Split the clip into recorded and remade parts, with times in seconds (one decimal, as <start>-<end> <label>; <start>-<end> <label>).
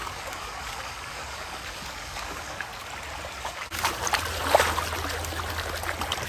0.0-2.7 remade; 2.7-3.4 recorded; 3.4-3.9 remade; 3.9-6.3 recorded